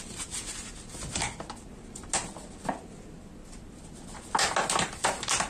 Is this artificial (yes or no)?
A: no